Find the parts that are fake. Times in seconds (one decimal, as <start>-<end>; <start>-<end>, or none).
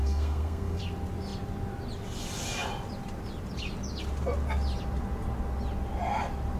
0.0-0.8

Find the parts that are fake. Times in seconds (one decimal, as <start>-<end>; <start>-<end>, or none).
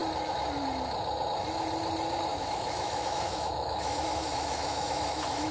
2.3-5.5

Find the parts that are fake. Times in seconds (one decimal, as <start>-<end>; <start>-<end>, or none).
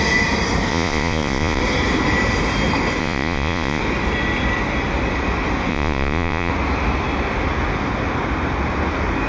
0.7-1.6; 3.0-3.8; 5.7-6.5